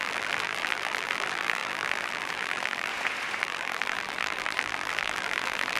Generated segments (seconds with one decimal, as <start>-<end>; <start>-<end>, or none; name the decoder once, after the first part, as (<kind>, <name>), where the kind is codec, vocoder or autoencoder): 0.0-2.9 (vocoder, BigVGAN v2); 3.4-5.8